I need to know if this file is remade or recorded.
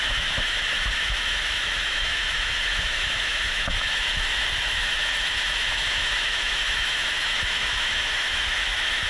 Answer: remade